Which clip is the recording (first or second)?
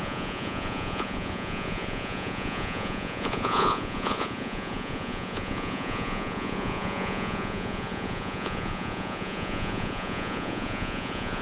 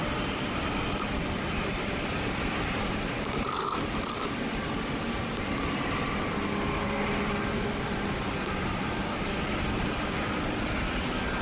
second